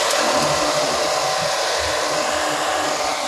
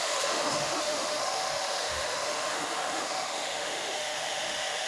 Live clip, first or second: first